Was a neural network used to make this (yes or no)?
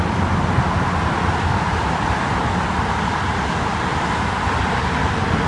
no